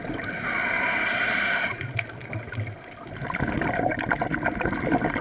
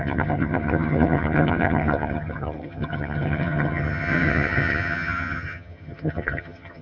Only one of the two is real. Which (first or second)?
first